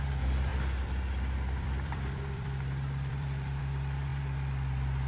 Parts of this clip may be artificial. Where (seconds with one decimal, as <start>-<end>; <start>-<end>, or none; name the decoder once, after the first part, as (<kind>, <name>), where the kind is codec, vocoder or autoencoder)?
0.0-5.1 (vocoder, BigVGAN v2)

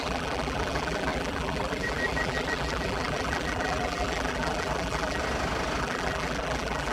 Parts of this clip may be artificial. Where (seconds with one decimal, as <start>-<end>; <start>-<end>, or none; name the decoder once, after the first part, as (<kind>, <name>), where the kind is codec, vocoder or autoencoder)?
0.0-5.2 (vocoder, BigVGAN v2); 5.8-6.9

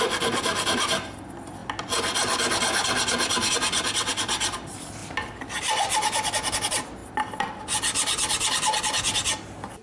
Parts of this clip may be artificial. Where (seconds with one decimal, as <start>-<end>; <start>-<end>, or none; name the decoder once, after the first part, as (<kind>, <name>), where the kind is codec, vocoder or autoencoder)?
5.0-5.6 (vocoder, BigVGAN v2)

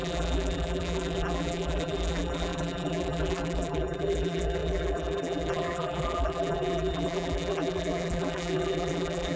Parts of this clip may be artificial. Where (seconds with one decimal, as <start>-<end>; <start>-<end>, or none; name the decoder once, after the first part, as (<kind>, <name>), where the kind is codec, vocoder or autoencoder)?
0.0-9.4 (vocoder, BigVGAN v2)

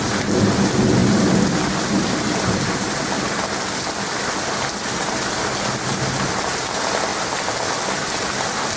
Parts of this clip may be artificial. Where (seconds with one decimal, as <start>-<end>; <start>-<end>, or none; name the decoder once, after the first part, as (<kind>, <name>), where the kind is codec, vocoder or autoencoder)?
1.0-2.9 (vocoder, BigVGAN v2)

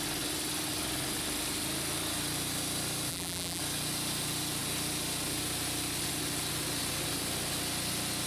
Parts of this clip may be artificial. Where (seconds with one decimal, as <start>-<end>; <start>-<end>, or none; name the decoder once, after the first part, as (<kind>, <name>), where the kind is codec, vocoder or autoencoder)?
3.1-3.6 (vocoder, BigVGAN v2)

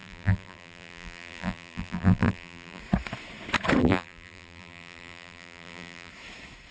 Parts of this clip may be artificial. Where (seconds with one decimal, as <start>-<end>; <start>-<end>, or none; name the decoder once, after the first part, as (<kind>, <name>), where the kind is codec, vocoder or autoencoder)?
0.0-2.8 (vocoder, BigVGAN v2); 3.8-6.1